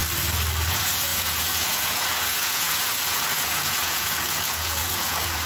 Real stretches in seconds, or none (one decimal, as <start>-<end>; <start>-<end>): 0.0-0.7